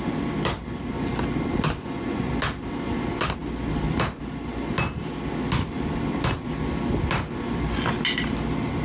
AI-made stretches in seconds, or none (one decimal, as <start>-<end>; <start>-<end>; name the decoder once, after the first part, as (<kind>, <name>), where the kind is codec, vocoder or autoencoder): 1.8-2.3 (vocoder, Vocos)